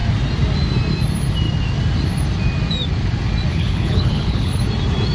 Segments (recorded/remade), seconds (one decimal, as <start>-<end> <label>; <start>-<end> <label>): 0.0-3.5 recorded; 3.5-4.6 remade; 4.6-5.1 recorded